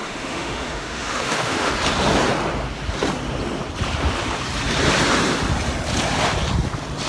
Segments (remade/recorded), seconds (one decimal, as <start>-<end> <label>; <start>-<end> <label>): 0.0-1.7 remade; 1.7-7.1 recorded